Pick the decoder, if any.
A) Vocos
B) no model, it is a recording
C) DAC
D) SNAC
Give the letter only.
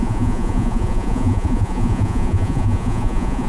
A